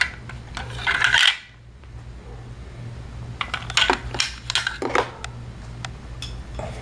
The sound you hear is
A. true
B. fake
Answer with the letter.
A